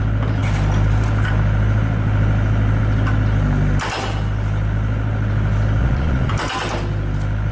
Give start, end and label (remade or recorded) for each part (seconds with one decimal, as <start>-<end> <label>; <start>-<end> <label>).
0.0-5.8 recorded; 5.8-6.3 remade; 6.3-7.5 recorded